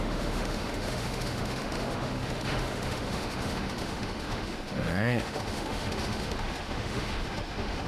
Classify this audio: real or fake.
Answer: fake